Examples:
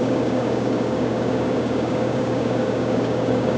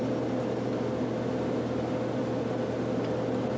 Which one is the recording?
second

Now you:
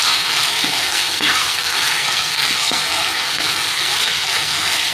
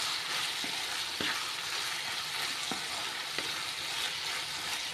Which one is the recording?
second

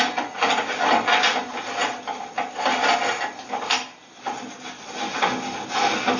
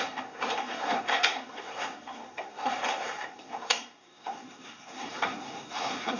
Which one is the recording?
first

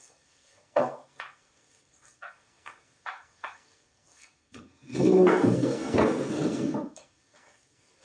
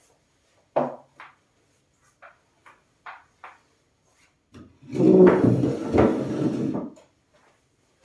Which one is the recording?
second